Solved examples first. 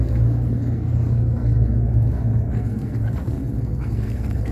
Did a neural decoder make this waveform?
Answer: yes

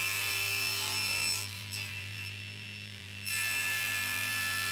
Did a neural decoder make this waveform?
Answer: yes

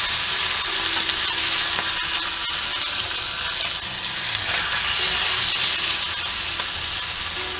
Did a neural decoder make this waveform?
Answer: no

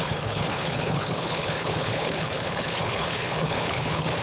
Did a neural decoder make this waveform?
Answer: yes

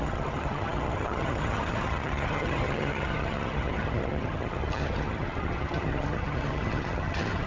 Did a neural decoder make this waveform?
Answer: yes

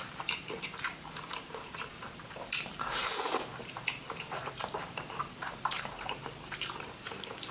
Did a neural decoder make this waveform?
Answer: yes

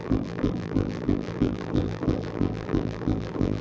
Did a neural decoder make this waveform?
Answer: yes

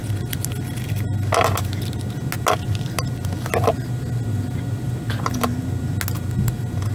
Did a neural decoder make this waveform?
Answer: no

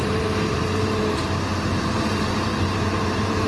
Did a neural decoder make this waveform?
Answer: yes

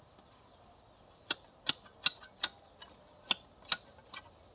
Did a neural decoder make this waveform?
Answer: no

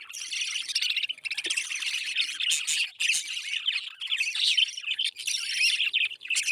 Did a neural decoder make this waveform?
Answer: no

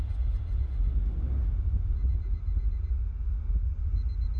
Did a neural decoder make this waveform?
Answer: no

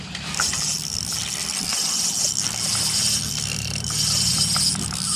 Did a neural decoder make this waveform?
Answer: yes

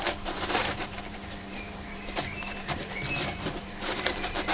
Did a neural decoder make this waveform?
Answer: yes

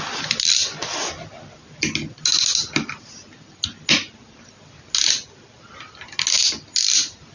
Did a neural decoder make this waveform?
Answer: no